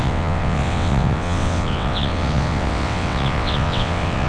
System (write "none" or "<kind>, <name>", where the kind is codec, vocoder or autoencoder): vocoder, WaveNeXt